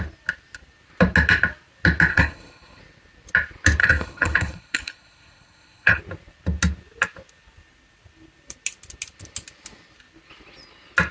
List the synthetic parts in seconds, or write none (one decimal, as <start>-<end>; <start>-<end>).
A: 2.1-2.8; 3.8-6.0